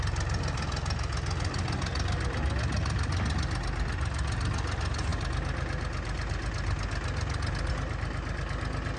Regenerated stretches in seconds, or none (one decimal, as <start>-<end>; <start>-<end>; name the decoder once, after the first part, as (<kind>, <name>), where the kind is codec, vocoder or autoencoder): none